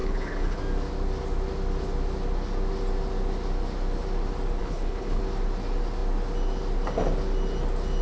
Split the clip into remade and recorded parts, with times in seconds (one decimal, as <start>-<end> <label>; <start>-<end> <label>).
0.0-0.6 remade; 0.6-4.6 recorded; 4.6-5.2 remade; 5.2-8.0 recorded